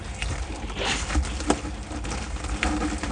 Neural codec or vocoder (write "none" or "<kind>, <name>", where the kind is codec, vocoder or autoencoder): none